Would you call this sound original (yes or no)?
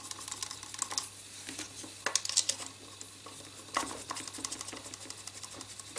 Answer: yes